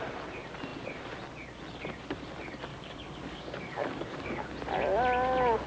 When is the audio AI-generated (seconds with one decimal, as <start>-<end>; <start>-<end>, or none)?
2.7-4.5